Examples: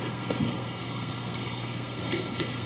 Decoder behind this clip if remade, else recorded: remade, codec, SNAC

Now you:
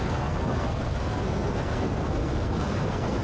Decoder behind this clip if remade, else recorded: remade, codec, SNAC